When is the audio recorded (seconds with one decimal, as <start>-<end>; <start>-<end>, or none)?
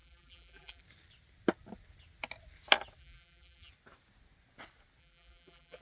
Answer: 0.8-3.0; 3.7-5.0